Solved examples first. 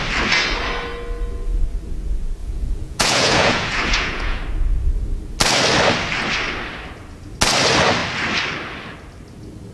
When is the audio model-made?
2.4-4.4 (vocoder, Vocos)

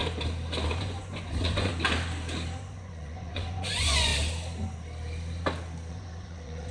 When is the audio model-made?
0.8-1.7 (vocoder, Vocos); 2.6-4.1; 5.9-6.7

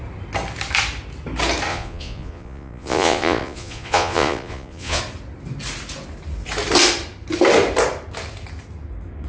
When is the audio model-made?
1.7-5.0 (vocoder, Vocos)

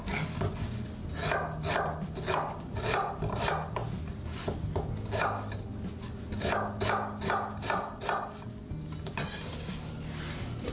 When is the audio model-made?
none